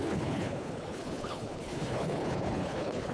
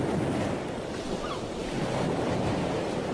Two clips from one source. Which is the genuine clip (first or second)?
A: second